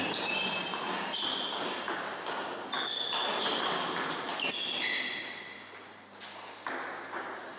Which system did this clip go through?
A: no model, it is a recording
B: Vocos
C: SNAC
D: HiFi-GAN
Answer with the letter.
A